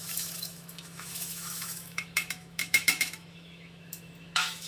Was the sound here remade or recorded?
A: remade